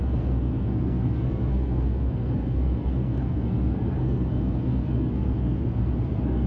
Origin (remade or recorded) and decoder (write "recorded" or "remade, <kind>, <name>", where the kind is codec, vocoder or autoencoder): remade, codec, SNAC